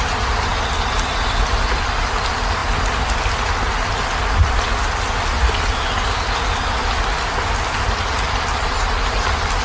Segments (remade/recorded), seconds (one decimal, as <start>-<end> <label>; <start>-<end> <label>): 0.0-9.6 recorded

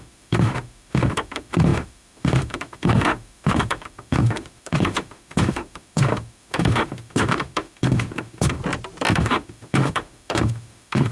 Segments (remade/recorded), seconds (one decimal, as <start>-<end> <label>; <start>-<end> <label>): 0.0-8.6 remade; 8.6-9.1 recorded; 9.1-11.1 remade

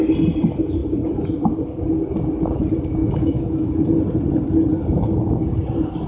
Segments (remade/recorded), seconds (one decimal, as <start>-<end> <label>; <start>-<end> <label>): 0.0-3.0 recorded; 3.0-3.9 remade; 3.9-6.1 recorded